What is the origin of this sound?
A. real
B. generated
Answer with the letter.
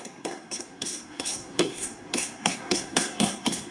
B